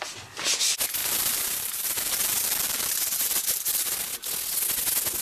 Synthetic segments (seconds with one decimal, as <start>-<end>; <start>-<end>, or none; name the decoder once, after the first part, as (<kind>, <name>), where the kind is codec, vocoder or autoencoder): 1.0-4.1 (vocoder, BigVGAN v2)